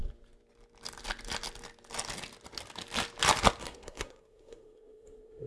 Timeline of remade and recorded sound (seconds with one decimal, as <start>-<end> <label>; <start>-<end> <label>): 0.0-3.6 recorded; 3.6-5.5 remade